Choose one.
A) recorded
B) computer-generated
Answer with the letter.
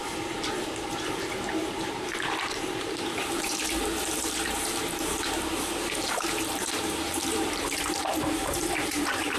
B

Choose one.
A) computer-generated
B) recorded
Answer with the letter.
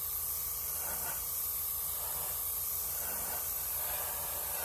B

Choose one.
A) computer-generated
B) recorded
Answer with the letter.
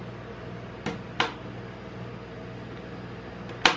B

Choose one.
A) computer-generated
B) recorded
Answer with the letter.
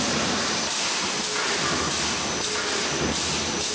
B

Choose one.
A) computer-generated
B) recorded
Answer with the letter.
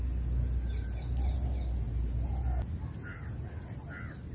B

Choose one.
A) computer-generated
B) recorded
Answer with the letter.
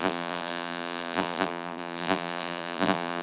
A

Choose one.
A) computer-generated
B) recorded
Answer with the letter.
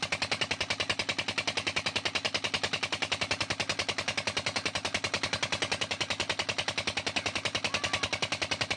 B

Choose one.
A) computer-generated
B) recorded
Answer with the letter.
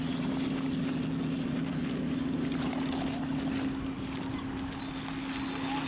B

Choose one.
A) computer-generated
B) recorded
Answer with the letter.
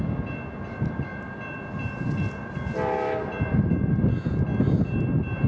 B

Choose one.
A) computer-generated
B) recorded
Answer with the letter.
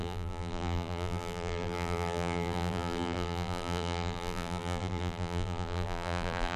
A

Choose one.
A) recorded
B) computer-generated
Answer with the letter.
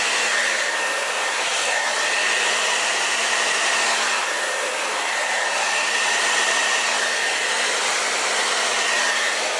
A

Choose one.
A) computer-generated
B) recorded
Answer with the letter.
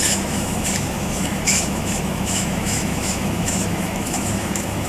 A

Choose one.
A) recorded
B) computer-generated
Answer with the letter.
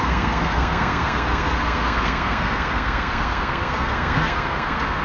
B